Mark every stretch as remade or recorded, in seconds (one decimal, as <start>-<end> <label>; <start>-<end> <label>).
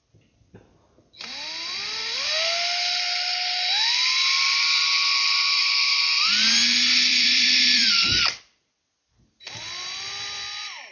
0.0-5.6 recorded; 5.6-6.4 remade; 6.4-7.1 recorded; 7.1-7.9 remade; 7.9-10.9 recorded